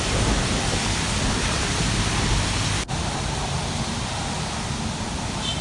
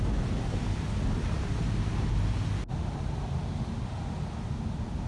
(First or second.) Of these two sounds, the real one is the second